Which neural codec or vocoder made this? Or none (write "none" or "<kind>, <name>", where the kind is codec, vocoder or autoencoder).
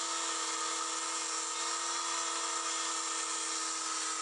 none